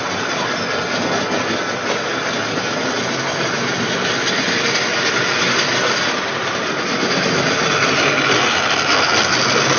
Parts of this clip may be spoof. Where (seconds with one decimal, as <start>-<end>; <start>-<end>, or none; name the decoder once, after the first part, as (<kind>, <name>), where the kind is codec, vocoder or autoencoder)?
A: none